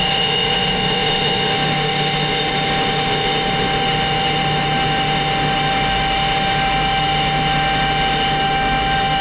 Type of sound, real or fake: fake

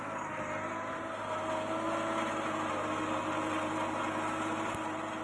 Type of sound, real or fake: real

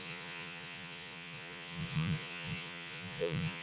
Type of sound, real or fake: fake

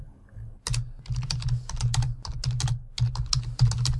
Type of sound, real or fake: real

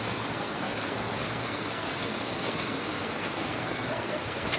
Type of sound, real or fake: fake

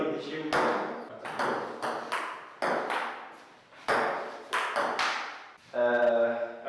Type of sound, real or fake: real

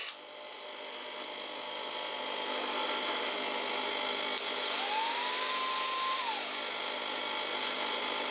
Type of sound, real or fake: real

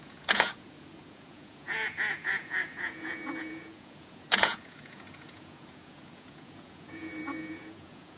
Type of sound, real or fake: fake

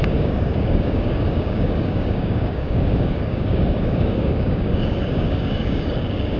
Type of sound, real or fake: fake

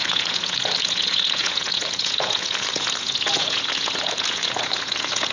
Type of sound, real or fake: fake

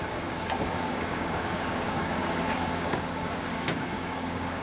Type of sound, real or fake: fake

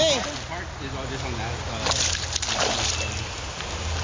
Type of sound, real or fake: real